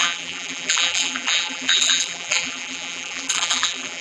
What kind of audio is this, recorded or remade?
remade